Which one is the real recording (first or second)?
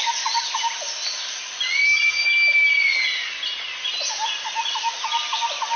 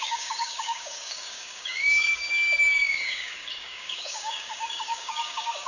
first